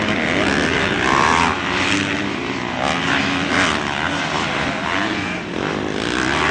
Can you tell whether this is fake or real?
real